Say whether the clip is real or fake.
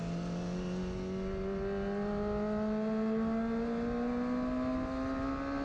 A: real